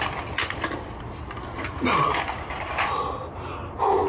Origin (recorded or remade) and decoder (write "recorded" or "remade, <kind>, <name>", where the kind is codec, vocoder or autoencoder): recorded